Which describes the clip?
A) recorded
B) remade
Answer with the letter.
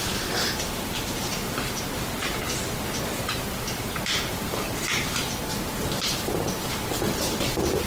B